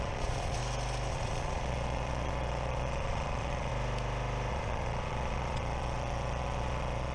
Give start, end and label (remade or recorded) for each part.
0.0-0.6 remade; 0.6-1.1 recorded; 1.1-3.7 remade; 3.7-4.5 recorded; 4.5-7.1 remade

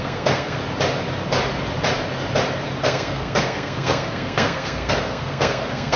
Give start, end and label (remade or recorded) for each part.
0.0-0.6 remade; 0.6-2.8 recorded; 2.8-6.0 remade

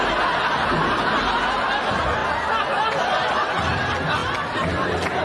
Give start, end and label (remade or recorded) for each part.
0.0-5.2 recorded

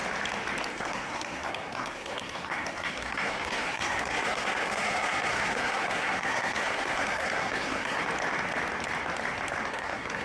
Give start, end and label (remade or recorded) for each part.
0.0-0.7 recorded; 0.7-8.0 remade; 8.0-9.7 recorded; 9.7-10.2 remade